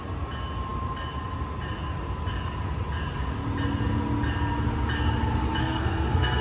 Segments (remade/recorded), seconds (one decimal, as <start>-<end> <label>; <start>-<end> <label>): 0.0-5.6 recorded; 5.6-6.4 remade